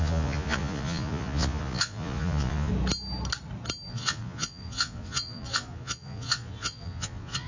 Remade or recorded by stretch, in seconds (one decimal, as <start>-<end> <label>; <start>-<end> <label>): 0.0-2.7 remade; 2.7-3.9 recorded; 3.9-7.5 remade